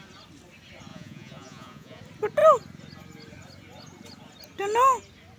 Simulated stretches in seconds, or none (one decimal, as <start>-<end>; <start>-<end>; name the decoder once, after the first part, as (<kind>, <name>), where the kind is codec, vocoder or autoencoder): 0.9-2.0 (vocoder, Vocos)